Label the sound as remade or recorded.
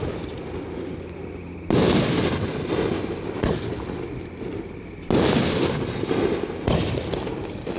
recorded